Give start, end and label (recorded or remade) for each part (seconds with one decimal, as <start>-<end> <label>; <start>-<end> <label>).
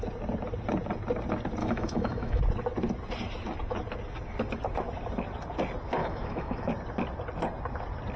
0.0-1.6 recorded; 1.6-2.4 remade; 2.4-6.0 recorded; 6.0-6.7 remade; 6.7-8.2 recorded